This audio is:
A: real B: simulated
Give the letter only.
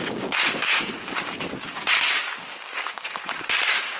B